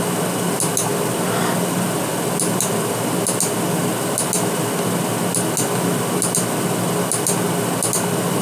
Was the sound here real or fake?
real